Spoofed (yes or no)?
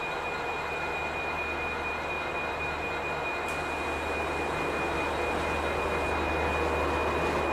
no